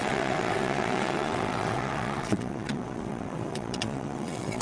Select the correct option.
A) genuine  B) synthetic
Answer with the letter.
B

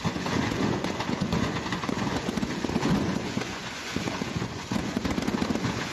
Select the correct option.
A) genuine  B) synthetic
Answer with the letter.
B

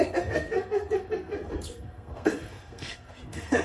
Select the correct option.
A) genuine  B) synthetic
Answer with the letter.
B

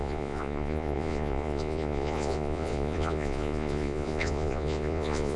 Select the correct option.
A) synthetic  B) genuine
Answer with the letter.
A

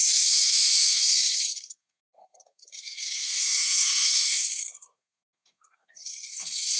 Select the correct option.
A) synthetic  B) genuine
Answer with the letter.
A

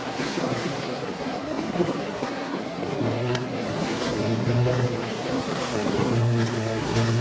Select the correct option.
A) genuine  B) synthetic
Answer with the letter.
B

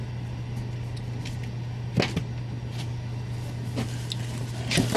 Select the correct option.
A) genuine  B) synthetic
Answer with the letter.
A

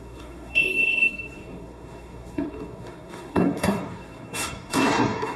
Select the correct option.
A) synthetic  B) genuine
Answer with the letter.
A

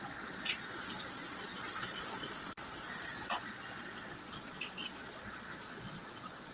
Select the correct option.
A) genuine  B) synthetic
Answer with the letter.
B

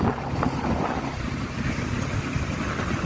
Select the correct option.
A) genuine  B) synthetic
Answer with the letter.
A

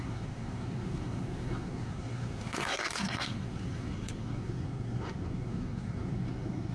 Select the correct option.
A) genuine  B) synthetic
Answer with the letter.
B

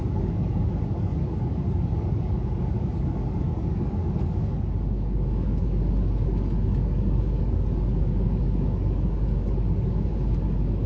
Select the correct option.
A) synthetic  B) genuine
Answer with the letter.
A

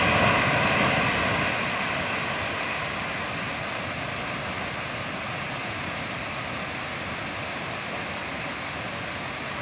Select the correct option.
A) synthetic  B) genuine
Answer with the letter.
B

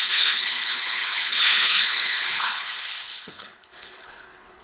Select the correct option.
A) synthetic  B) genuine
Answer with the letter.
A